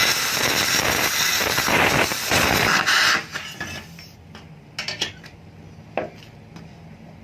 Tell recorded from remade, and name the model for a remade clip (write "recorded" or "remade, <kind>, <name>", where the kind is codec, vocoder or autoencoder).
recorded